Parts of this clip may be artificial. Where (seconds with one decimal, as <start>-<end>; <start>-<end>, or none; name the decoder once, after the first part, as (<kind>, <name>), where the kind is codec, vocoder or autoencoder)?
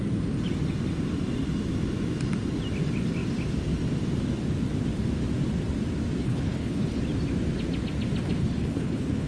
6.2-7.0 (codec, HILCodec); 8.4-9.3